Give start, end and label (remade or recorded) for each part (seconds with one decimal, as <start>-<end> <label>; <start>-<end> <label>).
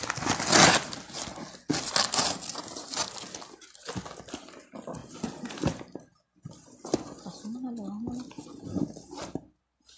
0.0-10.0 recorded